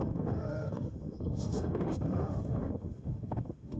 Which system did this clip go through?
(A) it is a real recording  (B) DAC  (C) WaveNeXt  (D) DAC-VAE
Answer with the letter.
D